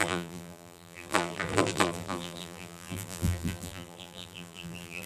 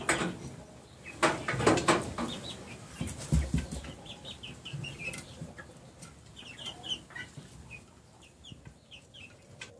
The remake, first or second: first